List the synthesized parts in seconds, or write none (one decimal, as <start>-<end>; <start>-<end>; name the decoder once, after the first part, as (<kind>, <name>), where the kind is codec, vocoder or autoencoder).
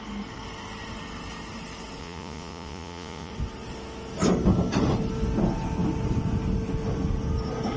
2.0-3.3 (vocoder, Vocos)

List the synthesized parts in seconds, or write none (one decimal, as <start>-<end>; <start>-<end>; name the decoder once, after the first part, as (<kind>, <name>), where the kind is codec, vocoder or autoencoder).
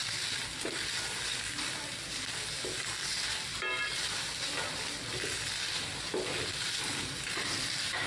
none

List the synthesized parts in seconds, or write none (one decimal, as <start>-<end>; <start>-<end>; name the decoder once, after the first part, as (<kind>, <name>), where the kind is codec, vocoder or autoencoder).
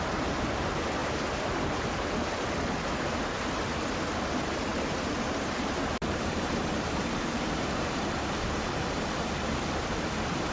1.0-1.8 (vocoder, BigVGAN v2); 4.7-8.7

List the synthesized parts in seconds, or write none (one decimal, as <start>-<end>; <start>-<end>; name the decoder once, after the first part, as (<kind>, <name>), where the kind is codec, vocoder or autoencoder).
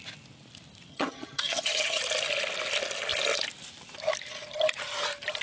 0.9-2.0 (vocoder, HiFi-GAN)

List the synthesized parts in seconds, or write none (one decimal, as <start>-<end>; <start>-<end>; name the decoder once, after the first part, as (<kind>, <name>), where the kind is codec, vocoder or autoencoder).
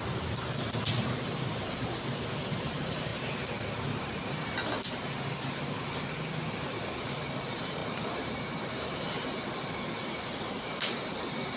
none